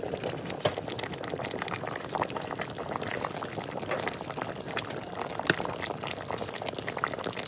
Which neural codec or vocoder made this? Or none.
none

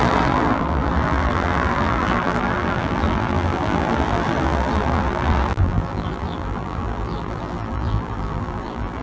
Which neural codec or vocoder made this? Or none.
vocoder, BigVGAN v2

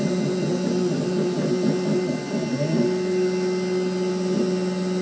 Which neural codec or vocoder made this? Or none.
none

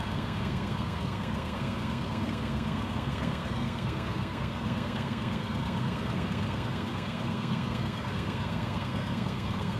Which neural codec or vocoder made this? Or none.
codec, SNAC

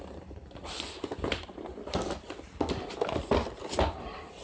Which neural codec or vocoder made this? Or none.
none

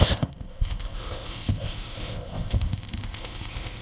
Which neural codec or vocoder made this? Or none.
codec, ZipCodec